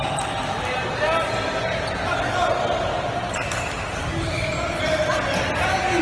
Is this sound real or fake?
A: real